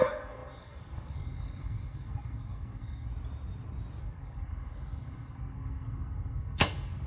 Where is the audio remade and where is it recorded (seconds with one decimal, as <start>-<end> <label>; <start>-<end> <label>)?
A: 0.0-3.1 remade; 3.1-4.0 recorded; 4.0-7.1 remade